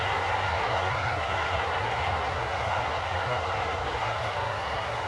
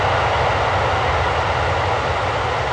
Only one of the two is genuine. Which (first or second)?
second